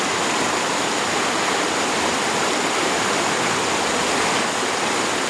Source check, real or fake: real